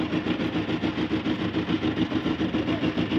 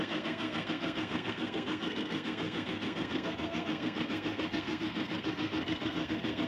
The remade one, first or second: second